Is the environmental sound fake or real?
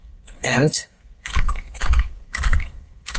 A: fake